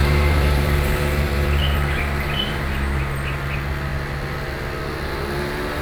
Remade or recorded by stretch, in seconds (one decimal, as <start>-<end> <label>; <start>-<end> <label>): 0.0-2.7 remade; 2.7-5.8 recorded